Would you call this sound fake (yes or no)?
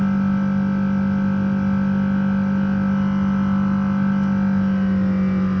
no